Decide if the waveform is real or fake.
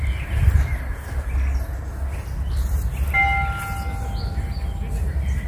real